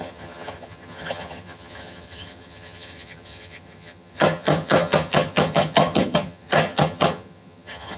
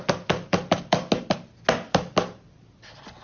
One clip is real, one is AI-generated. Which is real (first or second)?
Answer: second